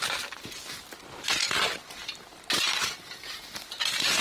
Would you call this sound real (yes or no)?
yes